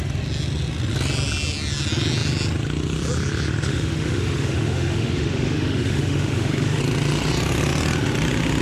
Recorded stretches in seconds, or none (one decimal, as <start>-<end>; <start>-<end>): 0.0-3.7; 6.8-8.6